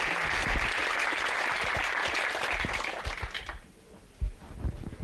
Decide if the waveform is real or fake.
real